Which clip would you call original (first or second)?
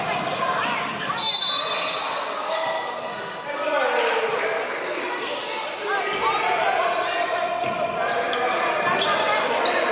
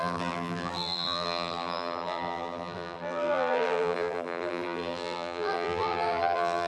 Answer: first